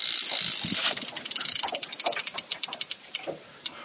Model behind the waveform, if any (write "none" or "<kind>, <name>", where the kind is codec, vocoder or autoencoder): none